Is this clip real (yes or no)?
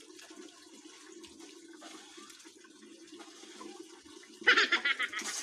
yes